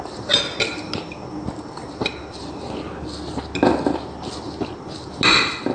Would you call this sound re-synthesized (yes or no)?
no